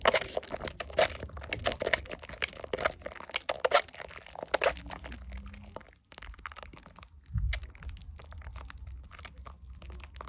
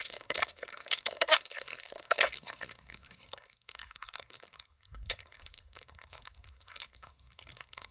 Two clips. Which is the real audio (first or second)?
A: first